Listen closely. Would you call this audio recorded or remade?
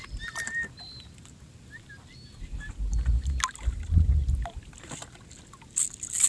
recorded